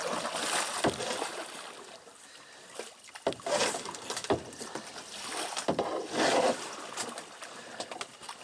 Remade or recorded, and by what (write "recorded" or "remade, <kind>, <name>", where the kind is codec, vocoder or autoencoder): recorded